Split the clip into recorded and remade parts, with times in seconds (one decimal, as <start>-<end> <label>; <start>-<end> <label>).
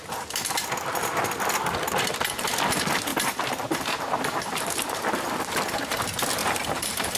0.0-3.1 recorded; 3.1-5.0 remade; 5.0-6.4 recorded; 6.4-7.2 remade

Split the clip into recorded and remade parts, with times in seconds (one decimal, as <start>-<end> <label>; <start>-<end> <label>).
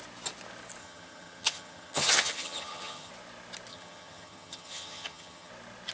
0.0-0.8 recorded; 0.8-3.1 remade; 3.1-3.7 recorded; 3.7-5.5 remade; 5.5-5.9 recorded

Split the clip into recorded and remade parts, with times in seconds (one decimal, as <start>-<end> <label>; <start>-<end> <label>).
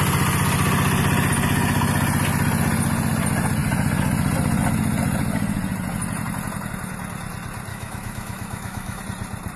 0.0-7.7 recorded; 7.7-9.0 remade; 9.0-9.6 recorded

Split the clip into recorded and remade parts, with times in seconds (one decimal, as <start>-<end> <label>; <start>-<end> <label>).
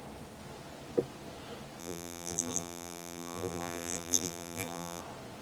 0.0-1.8 recorded; 1.8-5.0 remade; 5.0-5.4 recorded